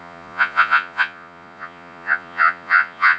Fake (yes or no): yes